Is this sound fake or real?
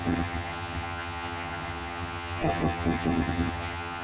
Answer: fake